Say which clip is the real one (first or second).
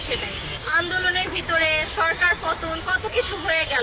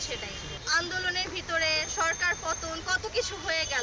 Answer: second